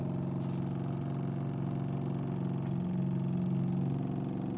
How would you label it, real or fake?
real